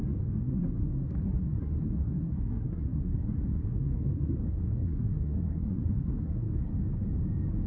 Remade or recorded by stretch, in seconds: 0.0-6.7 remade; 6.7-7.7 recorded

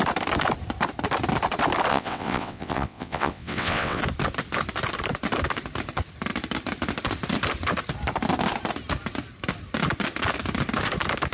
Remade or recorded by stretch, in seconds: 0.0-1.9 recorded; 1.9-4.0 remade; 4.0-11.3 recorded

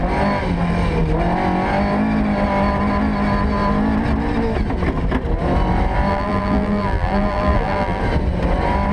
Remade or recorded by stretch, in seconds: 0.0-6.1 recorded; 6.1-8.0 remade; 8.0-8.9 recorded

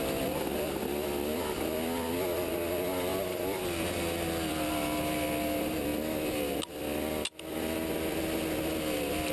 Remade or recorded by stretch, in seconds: 0.0-3.1 recorded; 3.1-4.7 remade; 4.7-9.3 recorded

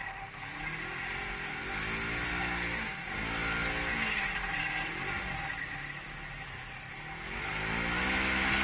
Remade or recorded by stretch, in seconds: 0.0-8.6 recorded

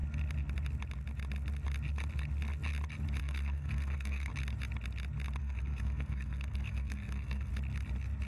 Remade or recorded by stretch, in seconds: 0.0-3.2 recorded; 3.2-4.3 remade; 4.3-5.4 recorded; 5.4-7.5 remade; 7.5-8.3 recorded